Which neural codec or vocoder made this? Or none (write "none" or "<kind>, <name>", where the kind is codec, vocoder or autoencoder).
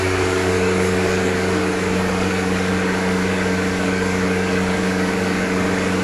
codec, DAC